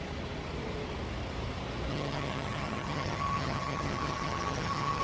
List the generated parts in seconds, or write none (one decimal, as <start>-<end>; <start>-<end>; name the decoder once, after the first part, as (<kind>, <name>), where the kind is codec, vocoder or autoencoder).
1.9-5.0 (vocoder, HiFi-GAN)